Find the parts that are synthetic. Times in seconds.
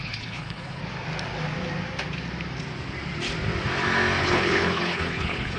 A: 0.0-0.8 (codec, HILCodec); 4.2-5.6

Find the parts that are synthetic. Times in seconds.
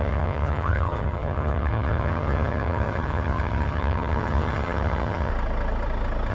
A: 0.0-5.3 (vocoder, HiFi-GAN)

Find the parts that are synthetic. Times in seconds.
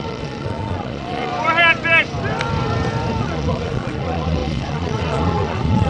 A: 0.0-1.3 (vocoder, Vocos); 3.2-5.9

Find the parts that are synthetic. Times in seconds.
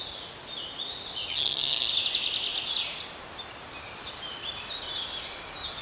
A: 1.3-1.9 (vocoder, HiFi-GAN)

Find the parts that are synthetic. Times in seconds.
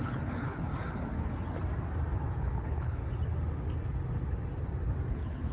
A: 0.0-0.7 (codec, HILCodec); 2.3-3.0; 5.1-5.5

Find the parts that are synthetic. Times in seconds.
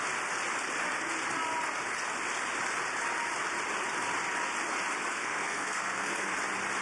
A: 5.1-6.3 (codec, SNAC)